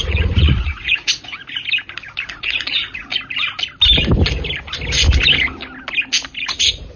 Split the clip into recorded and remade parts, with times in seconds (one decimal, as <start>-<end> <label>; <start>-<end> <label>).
0.0-1.4 remade; 1.4-2.3 recorded; 2.3-3.1 remade; 3.1-6.4 recorded; 6.4-7.0 remade